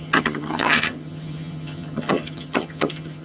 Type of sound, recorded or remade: remade